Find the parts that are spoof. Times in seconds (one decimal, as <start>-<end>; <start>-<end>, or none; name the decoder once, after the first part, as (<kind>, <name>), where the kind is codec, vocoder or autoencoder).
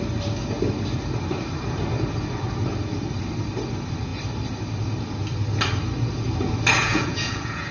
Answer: 6.8-7.7 (vocoder, Vocos)